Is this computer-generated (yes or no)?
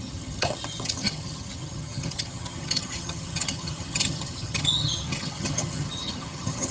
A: yes